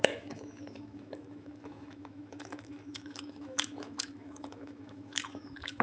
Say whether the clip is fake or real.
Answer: fake